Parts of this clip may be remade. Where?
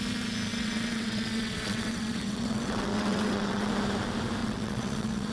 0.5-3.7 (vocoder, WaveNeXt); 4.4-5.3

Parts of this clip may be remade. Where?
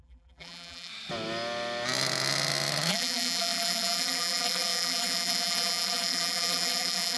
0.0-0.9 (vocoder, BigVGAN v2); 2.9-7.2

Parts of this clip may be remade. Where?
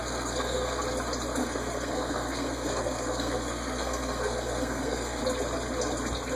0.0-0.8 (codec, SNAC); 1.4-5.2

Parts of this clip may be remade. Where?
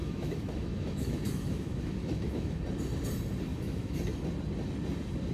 0.0-2.6 (autoencoder, DAC-VAE); 3.5-4.0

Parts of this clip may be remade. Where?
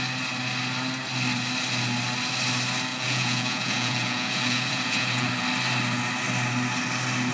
2.9-5.3 (vocoder, Vocos)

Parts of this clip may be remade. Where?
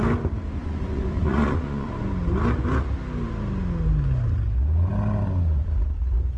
0.6-2.1 (vocoder, Vocos)